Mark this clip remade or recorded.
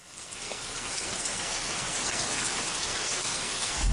remade